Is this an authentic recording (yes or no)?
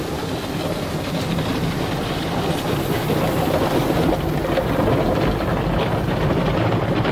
yes